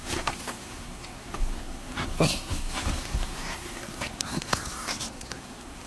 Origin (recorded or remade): remade